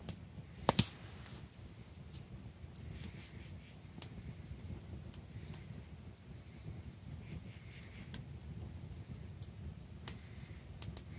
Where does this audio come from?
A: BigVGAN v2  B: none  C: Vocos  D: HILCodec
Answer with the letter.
B